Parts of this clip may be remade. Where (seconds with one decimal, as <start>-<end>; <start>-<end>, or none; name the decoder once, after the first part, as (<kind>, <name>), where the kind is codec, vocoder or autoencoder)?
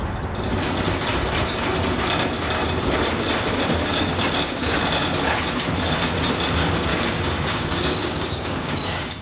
3.9-4.8 (codec, DAC); 6.9-9.2